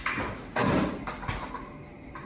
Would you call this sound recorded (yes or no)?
yes